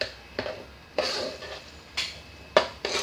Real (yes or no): no